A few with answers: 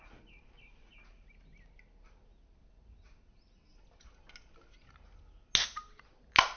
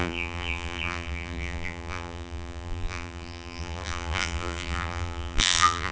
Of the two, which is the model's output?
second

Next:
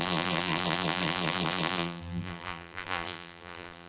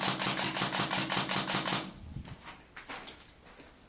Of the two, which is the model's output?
first